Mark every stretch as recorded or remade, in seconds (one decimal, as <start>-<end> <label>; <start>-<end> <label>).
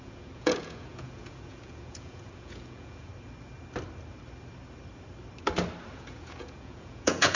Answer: 0.0-3.1 remade; 3.1-5.9 recorded; 5.9-7.4 remade